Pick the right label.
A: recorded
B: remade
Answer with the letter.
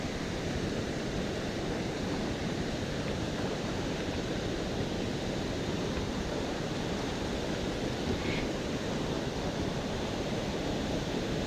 A